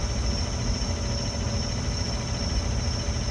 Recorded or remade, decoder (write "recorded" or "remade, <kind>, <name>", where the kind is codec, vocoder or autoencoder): recorded